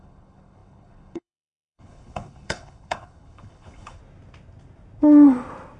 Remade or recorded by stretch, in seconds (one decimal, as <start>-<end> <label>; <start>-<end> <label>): 0.0-4.0 remade; 4.0-5.8 recorded